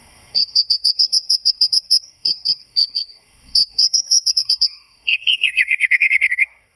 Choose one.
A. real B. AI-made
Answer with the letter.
B